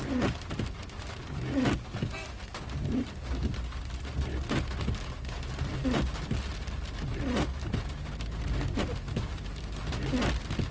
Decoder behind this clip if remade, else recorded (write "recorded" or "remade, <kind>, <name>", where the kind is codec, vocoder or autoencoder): recorded